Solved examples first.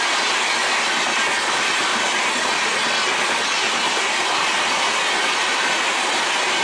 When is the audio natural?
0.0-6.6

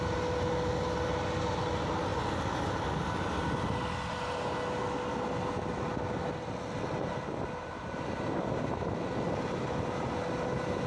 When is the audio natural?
0.0-10.9